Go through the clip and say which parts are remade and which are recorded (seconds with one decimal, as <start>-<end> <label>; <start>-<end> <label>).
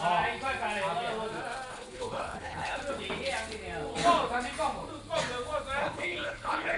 0.0-1.7 recorded; 1.7-2.8 remade; 2.8-5.8 recorded; 5.8-6.8 remade